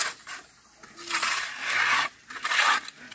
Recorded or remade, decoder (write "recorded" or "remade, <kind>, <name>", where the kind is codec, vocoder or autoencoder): recorded